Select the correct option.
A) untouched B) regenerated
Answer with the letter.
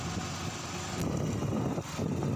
A